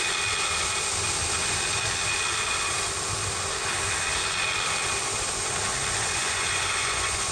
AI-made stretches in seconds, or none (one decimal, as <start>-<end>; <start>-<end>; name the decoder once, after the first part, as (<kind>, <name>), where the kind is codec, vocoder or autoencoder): 6.0-7.3 (vocoder, Vocos)